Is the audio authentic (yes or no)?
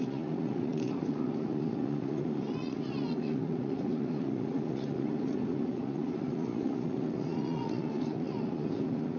no